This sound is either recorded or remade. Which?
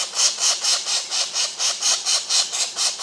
remade